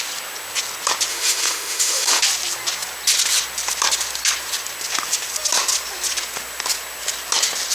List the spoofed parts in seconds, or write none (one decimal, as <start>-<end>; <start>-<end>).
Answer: 1.1-2.2